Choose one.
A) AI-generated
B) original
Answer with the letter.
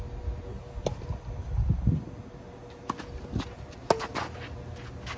B